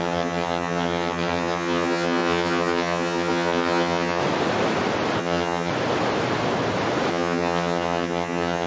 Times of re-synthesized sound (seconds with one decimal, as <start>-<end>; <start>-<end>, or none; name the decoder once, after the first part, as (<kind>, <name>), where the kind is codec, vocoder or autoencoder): 0.0-4.2 (vocoder, HiFi-GAN); 5.2-5.7; 7.1-8.7